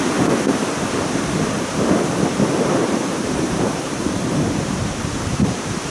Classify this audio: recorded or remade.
remade